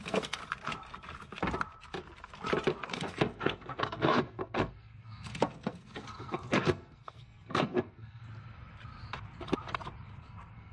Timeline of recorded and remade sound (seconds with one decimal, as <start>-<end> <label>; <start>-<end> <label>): 0.0-0.4 remade; 0.4-2.9 recorded; 2.9-8.2 remade; 8.2-10.2 recorded; 10.2-10.7 remade